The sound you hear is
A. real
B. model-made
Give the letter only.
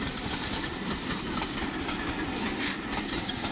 A